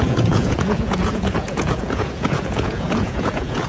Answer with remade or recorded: remade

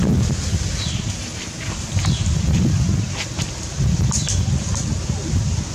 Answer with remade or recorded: recorded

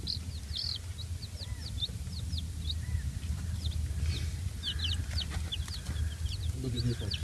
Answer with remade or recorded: recorded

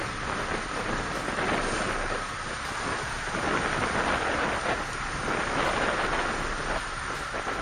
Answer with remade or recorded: recorded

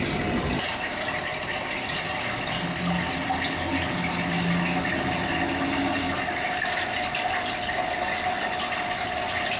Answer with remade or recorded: recorded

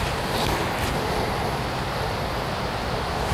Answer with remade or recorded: recorded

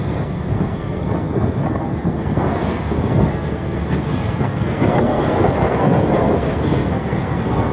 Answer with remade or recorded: remade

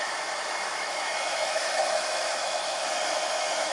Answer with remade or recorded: remade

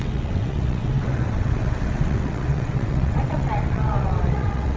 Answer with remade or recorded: remade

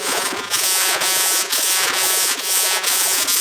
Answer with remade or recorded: remade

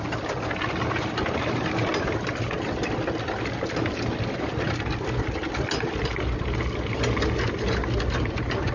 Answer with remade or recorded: recorded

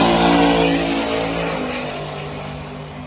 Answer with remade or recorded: recorded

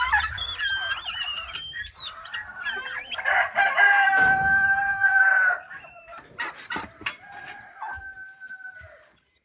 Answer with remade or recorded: remade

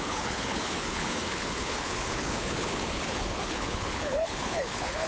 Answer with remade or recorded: remade